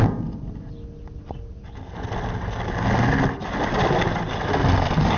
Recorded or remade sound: recorded